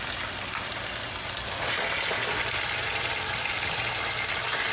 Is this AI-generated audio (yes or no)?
no